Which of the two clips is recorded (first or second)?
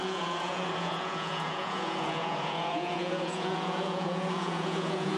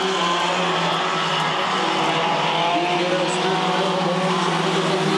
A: second